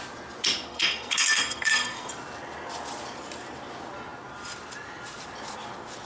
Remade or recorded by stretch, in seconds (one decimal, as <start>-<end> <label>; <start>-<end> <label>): 0.0-0.7 recorded; 0.7-2.1 remade; 2.1-6.1 recorded

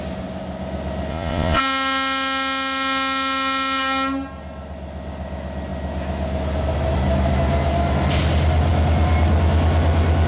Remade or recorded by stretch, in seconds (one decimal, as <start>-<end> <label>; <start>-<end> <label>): 0.0-1.1 recorded; 1.1-1.6 remade; 1.6-10.3 recorded

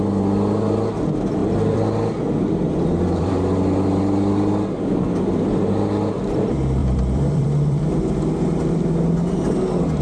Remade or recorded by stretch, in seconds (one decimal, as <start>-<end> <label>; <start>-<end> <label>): 0.0-1.4 recorded; 1.4-5.2 remade; 5.2-6.8 recorded; 6.8-7.9 remade; 7.9-10.0 recorded

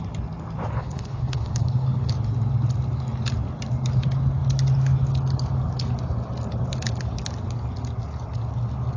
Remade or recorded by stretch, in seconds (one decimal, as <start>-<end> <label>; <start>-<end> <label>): 0.0-0.8 recorded; 0.8-2.1 remade; 2.1-9.0 recorded

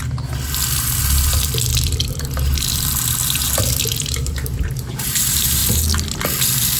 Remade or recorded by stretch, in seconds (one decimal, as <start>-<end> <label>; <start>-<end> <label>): 0.0-4.0 recorded; 4.0-5.6 remade; 5.6-6.8 recorded